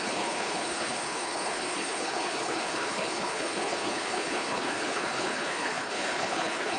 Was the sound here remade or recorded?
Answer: remade